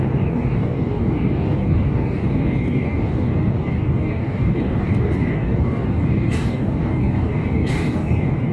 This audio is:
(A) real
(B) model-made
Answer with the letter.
B